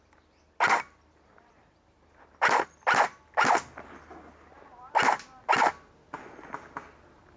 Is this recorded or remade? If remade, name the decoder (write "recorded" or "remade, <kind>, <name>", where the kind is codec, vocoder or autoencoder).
recorded